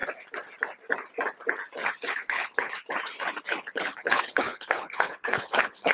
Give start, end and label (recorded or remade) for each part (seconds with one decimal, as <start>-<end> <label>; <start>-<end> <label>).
0.0-2.1 recorded; 2.1-2.7 remade; 2.7-3.6 recorded; 3.6-5.9 remade